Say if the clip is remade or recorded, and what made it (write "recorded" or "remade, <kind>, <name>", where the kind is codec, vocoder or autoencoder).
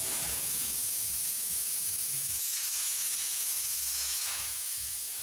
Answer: remade, autoencoder, DAC-VAE